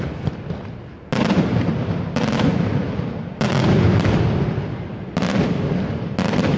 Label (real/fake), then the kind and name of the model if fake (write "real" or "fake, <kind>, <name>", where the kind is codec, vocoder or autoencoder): real